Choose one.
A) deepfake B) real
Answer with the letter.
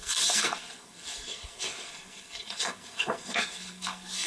A